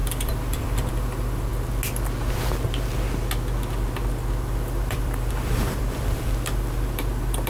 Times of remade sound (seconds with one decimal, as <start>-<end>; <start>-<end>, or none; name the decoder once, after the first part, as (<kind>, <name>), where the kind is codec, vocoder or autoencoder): 0.0-1.5 (vocoder, BigVGAN v2); 4.4-7.5